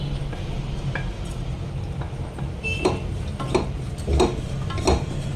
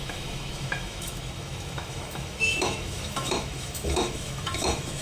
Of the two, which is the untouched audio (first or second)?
first